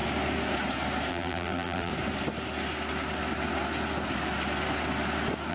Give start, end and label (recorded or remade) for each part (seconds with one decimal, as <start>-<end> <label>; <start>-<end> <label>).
0.0-1.1 recorded; 1.1-1.9 remade; 1.9-5.5 recorded